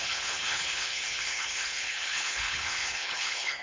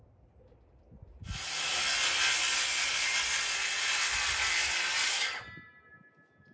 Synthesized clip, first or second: first